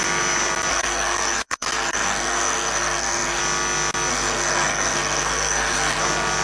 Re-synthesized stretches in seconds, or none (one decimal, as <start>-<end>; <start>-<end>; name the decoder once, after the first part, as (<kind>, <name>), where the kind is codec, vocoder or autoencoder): 0.7-3.4 (codec, SNAC); 4.1-6.0